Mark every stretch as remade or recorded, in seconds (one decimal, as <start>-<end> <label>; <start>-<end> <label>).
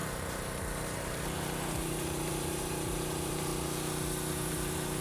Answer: 0.0-3.5 remade; 3.5-4.3 recorded; 4.3-5.0 remade